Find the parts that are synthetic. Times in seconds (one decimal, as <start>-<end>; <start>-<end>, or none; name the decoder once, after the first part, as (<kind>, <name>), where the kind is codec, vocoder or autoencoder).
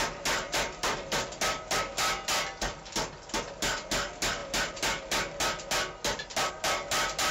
none